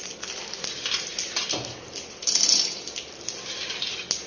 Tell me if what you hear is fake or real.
real